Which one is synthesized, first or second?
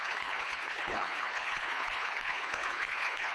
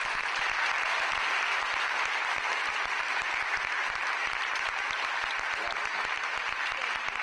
first